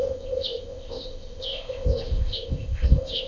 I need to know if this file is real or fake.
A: fake